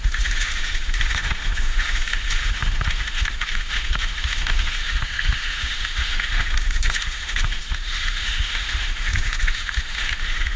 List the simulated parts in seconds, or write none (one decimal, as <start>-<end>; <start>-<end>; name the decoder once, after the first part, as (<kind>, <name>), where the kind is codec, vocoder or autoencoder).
0.0-10.6 (autoencoder, DAC-VAE)